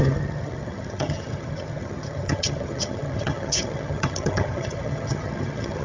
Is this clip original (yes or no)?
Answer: no